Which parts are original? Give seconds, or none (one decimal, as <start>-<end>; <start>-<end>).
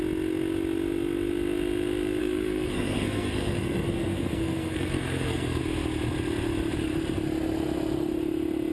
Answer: 0.0-2.2; 5.6-8.7